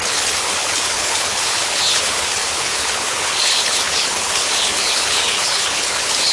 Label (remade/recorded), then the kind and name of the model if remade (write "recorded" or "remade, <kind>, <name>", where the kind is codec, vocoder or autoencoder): remade, codec, HILCodec